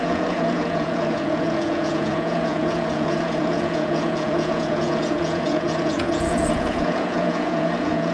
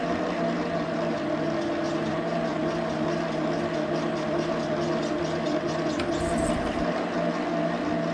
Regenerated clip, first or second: first